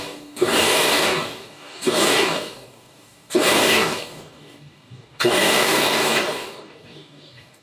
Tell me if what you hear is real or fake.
fake